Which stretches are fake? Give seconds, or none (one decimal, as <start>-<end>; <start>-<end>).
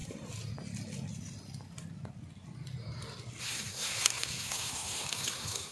3.4-5.7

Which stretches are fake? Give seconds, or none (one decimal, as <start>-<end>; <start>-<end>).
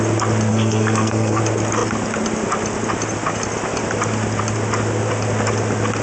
0.5-1.4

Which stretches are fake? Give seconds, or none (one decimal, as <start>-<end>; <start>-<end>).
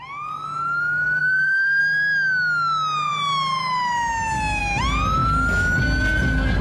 1.2-1.8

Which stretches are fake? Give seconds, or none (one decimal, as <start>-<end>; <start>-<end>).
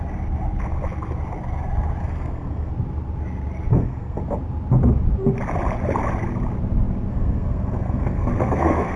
2.0-2.7; 3.7-4.2; 7.1-9.0